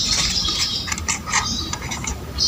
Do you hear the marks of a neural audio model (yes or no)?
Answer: yes